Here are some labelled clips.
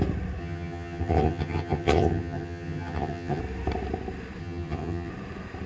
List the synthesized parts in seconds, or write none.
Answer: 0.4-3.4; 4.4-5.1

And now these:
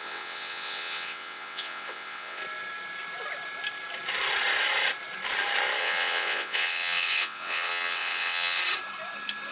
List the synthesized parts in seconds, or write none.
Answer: 0.0-2.4; 5.8-8.6